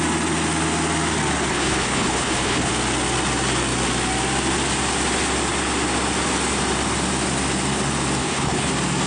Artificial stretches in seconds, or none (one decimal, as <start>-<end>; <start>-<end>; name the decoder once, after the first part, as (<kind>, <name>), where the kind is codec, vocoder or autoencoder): 1.5-2.7 (codec, HILCodec); 8.2-8.7